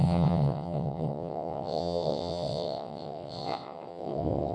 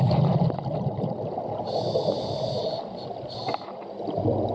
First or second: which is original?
second